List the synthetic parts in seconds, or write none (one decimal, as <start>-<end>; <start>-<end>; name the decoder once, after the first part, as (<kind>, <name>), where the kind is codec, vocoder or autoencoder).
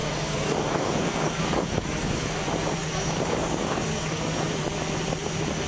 0.0-2.3 (codec, DAC); 2.8-4.2